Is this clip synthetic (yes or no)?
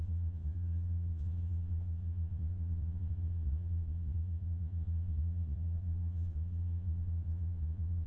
yes